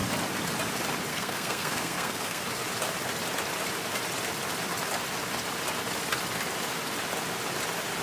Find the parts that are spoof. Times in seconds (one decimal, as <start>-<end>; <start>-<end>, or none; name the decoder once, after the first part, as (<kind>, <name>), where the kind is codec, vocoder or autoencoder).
1.1-2.4 (codec, SNAC)